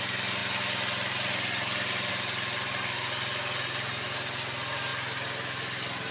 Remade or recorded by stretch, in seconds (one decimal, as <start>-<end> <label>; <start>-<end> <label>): 0.0-6.1 recorded